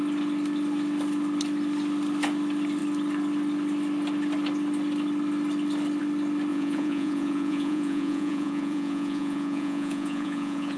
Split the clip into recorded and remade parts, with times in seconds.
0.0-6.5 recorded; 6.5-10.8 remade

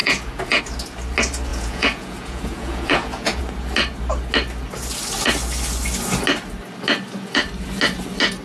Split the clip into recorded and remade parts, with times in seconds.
0.0-0.6 remade; 0.6-1.5 recorded; 1.5-3.4 remade; 3.4-8.4 recorded

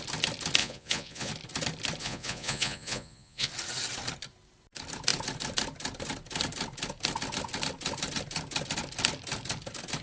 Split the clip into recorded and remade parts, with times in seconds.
0.0-0.6 recorded; 0.6-1.3 remade; 1.3-2.0 recorded; 2.0-3.5 remade; 3.5-10.0 recorded

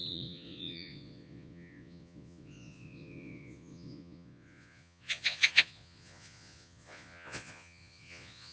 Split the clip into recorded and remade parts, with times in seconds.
0.0-8.5 remade

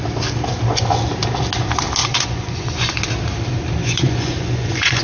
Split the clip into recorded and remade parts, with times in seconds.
0.0-2.0 recorded; 2.0-3.0 remade; 3.0-3.8 recorded; 3.8-5.0 remade